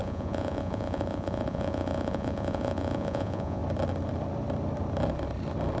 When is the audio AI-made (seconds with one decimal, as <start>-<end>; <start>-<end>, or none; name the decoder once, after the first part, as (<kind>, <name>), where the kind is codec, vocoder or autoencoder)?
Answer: 0.0-3.6 (vocoder, Vocos)